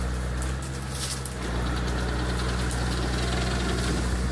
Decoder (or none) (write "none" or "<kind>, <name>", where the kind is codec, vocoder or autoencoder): none